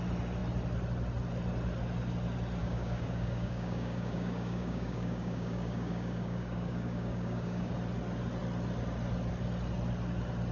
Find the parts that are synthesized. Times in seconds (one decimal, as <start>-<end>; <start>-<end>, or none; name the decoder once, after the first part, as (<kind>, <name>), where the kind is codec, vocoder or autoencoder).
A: 2.6-7.7 (codec, DAC)